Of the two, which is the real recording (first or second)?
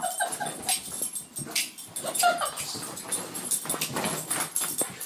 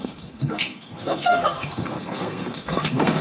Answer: first